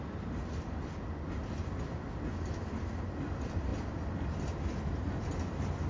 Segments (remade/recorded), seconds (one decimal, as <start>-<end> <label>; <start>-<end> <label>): 0.0-5.9 recorded